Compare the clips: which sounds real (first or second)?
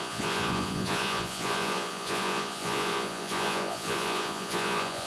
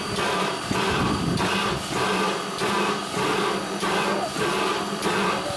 second